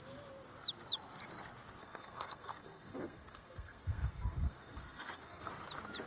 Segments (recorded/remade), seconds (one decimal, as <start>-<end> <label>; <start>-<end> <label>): 0.0-1.8 recorded; 1.8-5.5 remade; 5.5-6.1 recorded